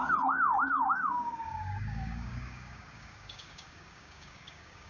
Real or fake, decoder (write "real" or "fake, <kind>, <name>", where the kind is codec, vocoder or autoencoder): fake, codec, DAC